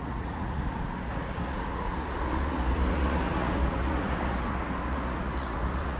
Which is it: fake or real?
fake